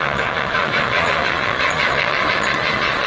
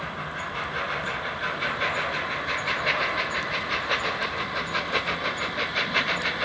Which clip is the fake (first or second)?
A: first